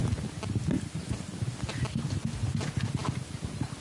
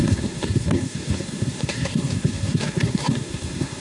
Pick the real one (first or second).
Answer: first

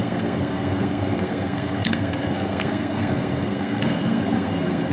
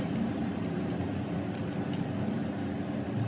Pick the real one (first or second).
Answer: second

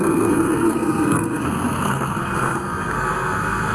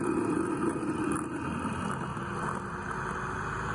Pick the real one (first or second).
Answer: second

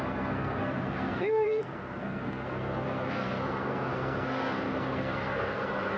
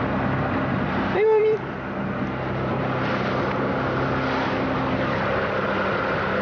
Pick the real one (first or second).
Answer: second